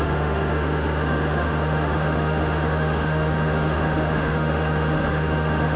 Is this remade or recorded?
remade